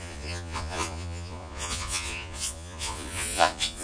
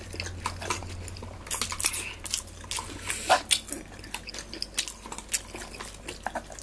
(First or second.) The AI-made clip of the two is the first